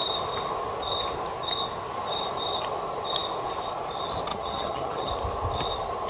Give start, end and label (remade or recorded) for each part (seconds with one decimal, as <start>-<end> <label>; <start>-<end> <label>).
0.0-4.3 recorded; 4.3-5.1 remade; 5.1-6.1 recorded

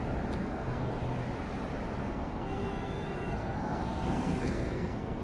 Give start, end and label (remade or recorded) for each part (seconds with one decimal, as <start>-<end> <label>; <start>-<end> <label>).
0.0-0.4 recorded; 0.4-0.9 remade; 0.9-2.0 recorded; 2.0-5.2 remade

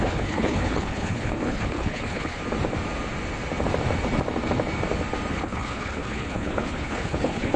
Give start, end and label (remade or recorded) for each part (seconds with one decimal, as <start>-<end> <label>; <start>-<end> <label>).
0.0-2.4 remade; 2.4-5.3 recorded; 5.3-7.6 remade